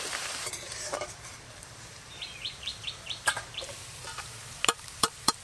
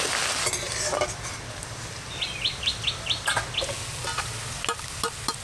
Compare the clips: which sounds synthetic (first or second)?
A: first